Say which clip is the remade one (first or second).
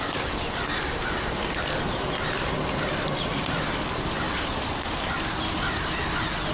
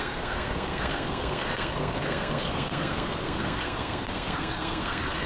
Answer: second